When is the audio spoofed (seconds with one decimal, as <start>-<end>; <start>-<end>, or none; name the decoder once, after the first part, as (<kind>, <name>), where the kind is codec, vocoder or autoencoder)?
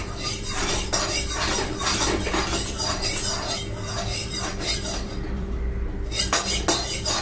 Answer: 0.0-0.6 (vocoder, BigVGAN v2); 4.1-5.9